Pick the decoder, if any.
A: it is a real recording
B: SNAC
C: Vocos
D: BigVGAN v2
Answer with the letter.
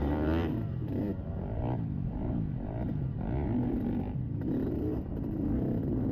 D